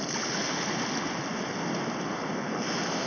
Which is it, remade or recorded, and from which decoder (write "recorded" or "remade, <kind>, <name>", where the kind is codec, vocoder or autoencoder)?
recorded